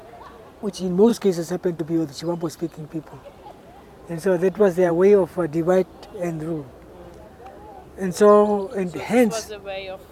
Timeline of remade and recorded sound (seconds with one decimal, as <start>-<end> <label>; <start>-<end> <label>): 0.0-0.7 remade; 0.7-2.8 recorded; 2.8-4.9 remade; 4.9-10.1 recorded

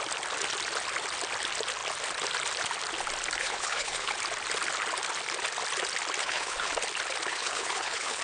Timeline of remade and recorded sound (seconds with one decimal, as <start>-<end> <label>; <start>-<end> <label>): 0.0-3.4 recorded; 3.4-4.1 remade; 4.1-6.2 recorded; 6.2-6.7 remade; 6.7-7.3 recorded; 7.3-8.2 remade

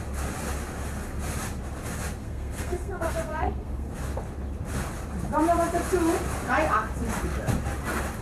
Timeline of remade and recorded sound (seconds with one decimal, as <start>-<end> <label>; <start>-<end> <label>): 0.0-2.2 recorded; 2.2-3.9 remade; 3.9-8.2 recorded

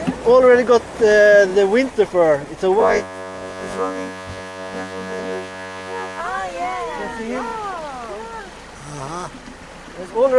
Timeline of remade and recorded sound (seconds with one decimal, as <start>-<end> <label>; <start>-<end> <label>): 0.0-2.8 recorded; 2.8-6.2 remade; 6.2-10.4 recorded

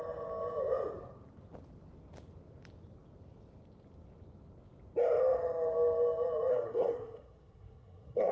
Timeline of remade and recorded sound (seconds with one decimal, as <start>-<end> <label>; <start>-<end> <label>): 0.0-6.5 recorded; 6.5-8.3 remade

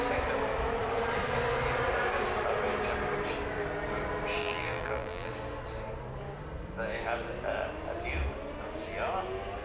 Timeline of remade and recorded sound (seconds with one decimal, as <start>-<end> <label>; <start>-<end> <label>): 0.0-4.4 recorded; 4.4-5.3 remade; 5.3-9.6 recorded

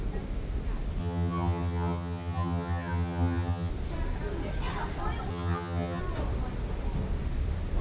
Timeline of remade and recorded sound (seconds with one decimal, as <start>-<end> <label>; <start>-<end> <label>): 0.0-1.0 recorded; 1.0-3.7 remade; 3.7-5.3 recorded; 5.3-6.0 remade; 6.0-7.8 recorded

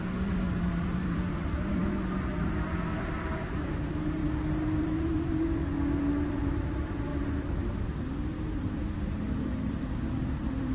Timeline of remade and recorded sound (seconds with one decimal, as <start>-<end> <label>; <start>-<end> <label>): 0.0-4.2 remade; 4.2-4.8 recorded; 4.8-5.7 remade; 5.7-6.3 recorded; 6.3-10.7 remade